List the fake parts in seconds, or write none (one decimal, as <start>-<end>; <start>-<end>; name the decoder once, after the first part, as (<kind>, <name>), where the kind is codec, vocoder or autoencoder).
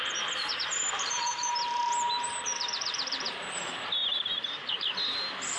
0.0-5.6 (vocoder, BigVGAN v2)